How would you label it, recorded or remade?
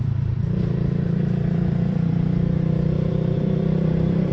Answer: remade